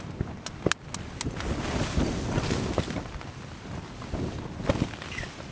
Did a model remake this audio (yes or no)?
no